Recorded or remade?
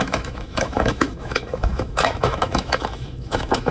remade